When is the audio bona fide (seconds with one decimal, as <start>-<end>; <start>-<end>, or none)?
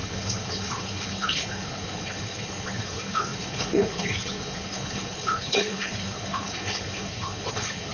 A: none